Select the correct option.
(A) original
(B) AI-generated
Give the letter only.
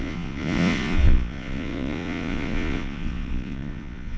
B